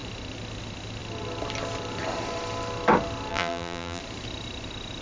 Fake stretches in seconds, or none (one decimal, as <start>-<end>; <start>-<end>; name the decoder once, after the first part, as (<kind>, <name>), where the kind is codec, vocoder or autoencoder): 3.3-4.0 (vocoder, BigVGAN v2)